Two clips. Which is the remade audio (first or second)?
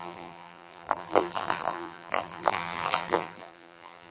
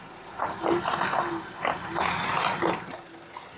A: first